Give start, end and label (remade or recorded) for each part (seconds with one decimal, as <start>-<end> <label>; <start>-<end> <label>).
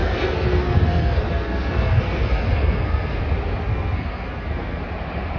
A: 0.0-3.2 remade; 3.2-3.7 recorded; 3.7-4.8 remade; 4.8-5.4 recorded